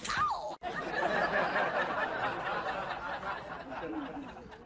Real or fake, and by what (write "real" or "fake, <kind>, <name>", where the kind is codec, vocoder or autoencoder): real